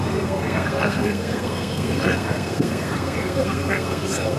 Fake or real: fake